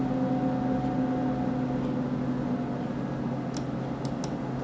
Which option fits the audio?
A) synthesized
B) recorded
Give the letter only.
B